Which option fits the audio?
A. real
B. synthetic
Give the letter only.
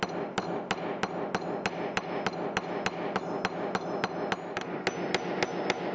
A